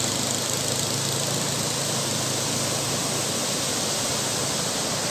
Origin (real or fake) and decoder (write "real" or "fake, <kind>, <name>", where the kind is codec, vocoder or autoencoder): real